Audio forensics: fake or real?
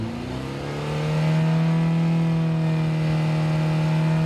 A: real